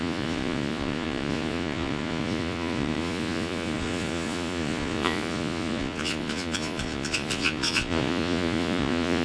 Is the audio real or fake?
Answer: fake